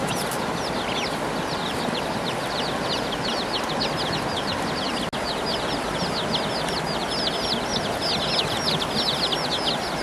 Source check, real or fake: real